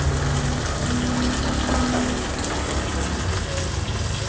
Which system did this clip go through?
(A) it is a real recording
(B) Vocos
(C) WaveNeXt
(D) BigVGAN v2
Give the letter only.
A